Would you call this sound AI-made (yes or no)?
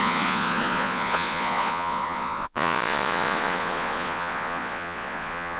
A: yes